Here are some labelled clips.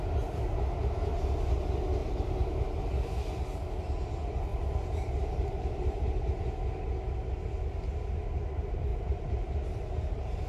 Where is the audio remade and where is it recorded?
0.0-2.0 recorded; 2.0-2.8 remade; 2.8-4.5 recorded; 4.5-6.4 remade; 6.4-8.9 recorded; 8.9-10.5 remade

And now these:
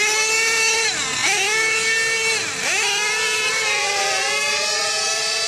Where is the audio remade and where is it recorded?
0.0-5.5 recorded

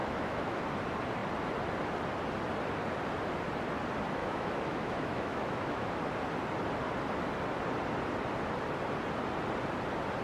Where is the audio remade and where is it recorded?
0.0-0.6 remade; 0.6-4.2 recorded; 4.2-5.9 remade; 5.9-10.2 recorded

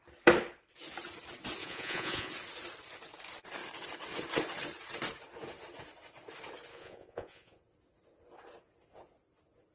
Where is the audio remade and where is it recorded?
0.0-1.6 recorded; 1.6-2.3 remade; 2.3-6.7 recorded; 6.7-7.6 remade; 7.6-9.7 recorded

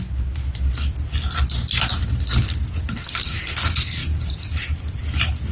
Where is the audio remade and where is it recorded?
0.0-4.0 recorded; 4.0-5.0 remade; 5.0-5.5 recorded

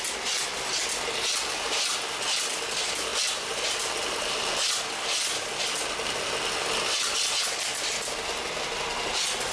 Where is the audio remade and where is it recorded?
0.0-9.5 recorded

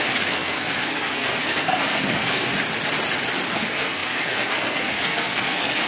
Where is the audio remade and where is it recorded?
0.0-2.5 remade; 2.5-3.5 recorded; 3.5-5.9 remade

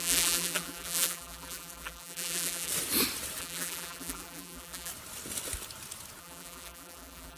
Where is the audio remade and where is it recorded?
0.0-2.7 remade; 2.7-3.4 recorded; 3.4-4.9 remade; 4.9-6.2 recorded; 6.2-7.4 remade